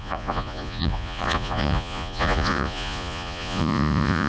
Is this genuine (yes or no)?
no